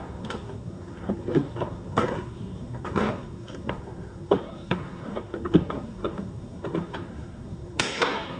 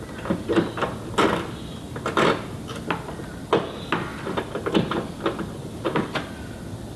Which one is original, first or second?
second